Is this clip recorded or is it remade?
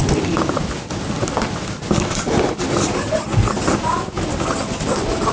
recorded